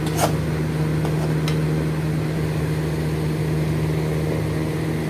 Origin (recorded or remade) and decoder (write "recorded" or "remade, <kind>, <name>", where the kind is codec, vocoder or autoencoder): recorded